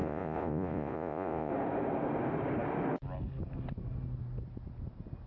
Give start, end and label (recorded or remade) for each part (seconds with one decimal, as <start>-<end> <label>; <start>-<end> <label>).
0.0-1.5 remade; 1.5-5.3 recorded